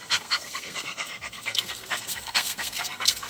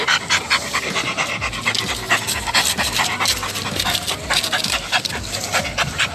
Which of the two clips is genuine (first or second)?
second